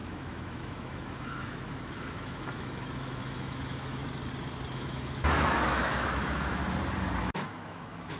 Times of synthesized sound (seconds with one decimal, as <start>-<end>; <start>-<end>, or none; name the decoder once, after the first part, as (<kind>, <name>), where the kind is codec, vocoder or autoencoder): 0.0-4.0 (autoencoder, DAC-VAE); 4.7-6.6; 7.2-8.2